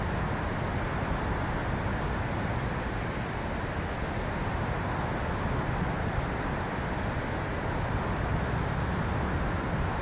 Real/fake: real